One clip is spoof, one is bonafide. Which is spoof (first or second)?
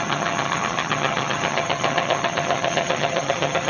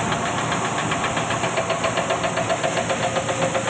first